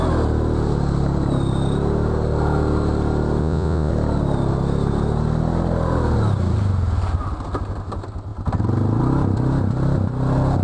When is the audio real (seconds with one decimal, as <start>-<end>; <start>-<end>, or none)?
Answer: 0.0-3.4; 3.9-10.6